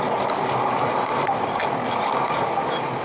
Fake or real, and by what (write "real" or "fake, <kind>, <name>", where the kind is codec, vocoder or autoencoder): real